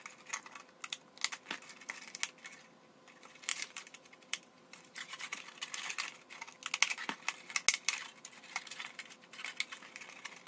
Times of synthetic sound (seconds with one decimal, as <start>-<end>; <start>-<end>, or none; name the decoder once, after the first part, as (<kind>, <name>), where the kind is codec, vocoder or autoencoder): 3.5-5.4 (vocoder, BigVGAN v2); 8.1-8.6